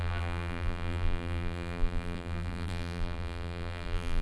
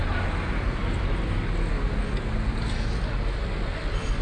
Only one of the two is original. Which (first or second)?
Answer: second